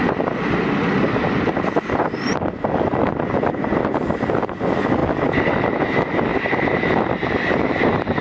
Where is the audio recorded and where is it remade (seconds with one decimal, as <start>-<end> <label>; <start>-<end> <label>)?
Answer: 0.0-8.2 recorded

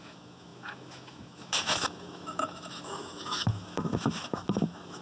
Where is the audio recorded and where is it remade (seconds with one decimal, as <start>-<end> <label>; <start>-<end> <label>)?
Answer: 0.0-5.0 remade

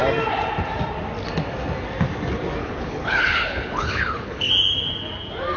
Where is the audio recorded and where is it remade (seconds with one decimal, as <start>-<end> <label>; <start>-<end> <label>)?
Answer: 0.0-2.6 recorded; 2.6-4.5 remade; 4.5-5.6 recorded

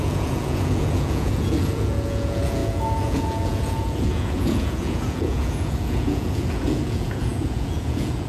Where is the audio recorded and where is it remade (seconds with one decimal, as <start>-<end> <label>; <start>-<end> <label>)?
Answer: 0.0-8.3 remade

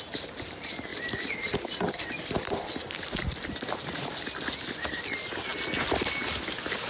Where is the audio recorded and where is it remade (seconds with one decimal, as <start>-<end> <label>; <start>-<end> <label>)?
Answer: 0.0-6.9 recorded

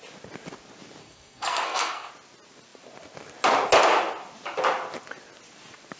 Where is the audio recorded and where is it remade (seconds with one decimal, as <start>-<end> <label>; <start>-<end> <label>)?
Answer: 0.0-1.0 recorded; 1.0-2.1 remade; 2.1-6.0 recorded